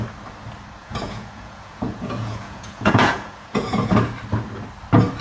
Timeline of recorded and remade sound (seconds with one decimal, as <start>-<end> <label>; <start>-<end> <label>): 0.0-0.8 recorded; 0.8-3.9 remade; 3.9-5.2 recorded